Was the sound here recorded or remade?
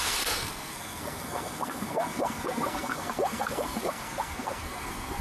remade